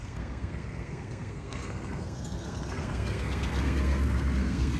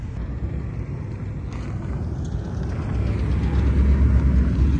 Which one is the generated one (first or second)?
first